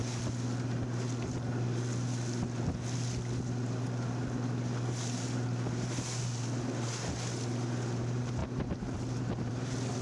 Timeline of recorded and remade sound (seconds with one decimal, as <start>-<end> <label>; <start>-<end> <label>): 0.0-10.0 recorded